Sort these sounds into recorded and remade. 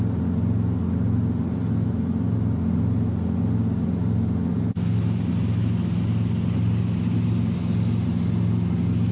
recorded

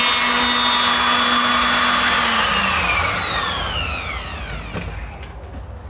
recorded